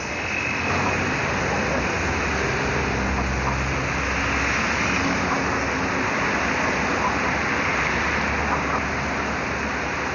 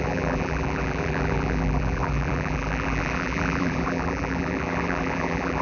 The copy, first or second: second